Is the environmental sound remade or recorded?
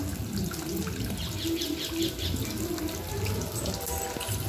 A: recorded